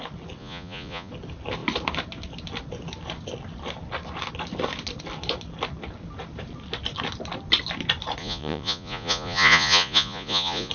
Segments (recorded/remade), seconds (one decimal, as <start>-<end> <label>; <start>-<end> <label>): 0.0-0.4 recorded; 0.4-1.1 remade; 1.1-8.2 recorded; 8.2-10.7 remade